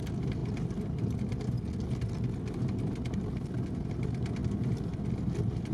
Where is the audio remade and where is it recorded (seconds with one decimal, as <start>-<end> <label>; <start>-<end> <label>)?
0.0-4.4 recorded; 4.4-5.7 remade